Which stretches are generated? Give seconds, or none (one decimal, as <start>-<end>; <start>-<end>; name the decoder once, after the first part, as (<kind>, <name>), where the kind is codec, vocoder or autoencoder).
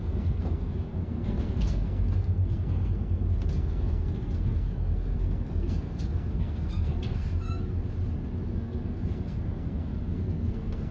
0.0-7.8 (codec, SNAC); 8.4-10.9